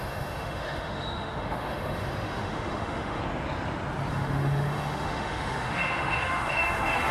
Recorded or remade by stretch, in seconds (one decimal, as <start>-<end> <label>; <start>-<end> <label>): 0.0-3.2 remade; 3.2-4.1 recorded; 4.1-7.1 remade